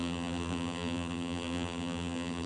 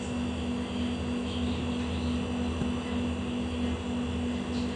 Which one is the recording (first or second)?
second